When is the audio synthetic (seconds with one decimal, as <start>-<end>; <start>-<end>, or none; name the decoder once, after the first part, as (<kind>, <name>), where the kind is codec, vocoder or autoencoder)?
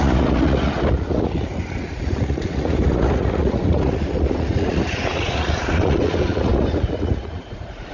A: 0.0-7.9 (vocoder, Vocos)